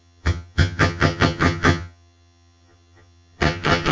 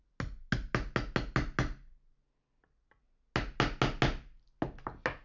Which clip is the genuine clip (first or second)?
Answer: second